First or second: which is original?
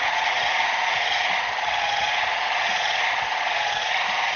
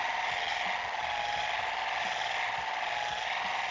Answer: second